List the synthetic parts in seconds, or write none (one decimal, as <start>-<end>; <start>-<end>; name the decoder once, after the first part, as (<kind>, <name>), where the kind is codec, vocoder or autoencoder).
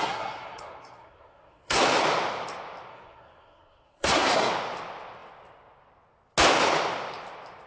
0.0-1.8 (codec, SNAC); 2.9-4.5